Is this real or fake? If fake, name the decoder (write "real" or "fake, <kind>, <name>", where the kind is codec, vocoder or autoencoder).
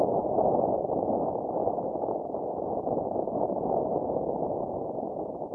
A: real